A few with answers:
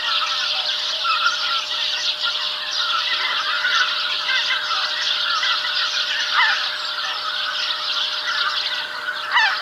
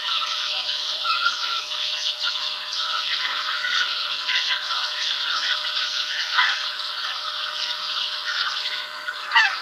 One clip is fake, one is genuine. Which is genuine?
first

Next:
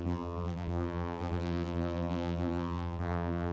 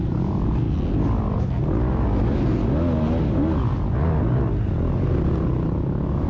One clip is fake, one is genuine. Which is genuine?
second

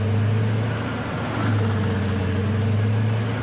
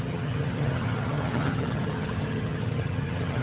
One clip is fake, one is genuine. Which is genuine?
first